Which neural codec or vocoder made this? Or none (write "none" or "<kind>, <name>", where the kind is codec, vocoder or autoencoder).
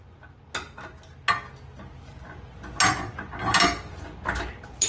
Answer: none